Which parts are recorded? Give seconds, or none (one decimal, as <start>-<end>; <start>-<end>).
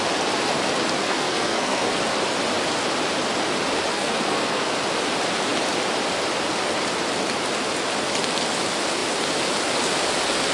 0.0-1.0; 2.0-3.9; 4.7-10.5